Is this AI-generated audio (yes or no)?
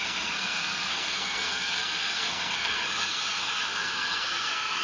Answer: yes